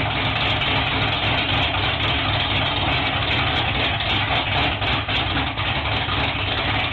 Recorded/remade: recorded